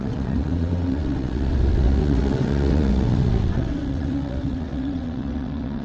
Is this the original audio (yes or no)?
no